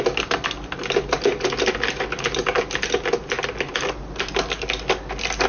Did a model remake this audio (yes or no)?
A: no